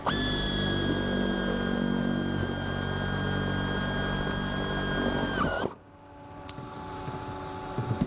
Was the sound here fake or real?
real